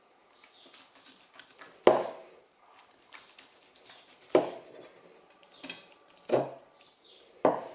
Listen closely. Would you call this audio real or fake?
real